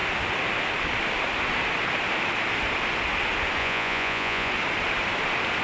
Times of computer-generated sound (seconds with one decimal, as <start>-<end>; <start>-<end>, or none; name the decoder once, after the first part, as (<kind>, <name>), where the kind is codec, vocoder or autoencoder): 3.6-4.5 (vocoder, Vocos)